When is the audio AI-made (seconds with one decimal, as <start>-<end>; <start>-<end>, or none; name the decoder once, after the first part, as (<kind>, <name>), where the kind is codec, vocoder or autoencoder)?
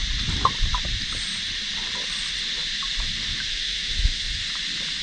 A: 3.5-4.3 (autoencoder, DAC-VAE)